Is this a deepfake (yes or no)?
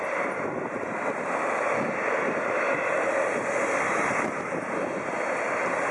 no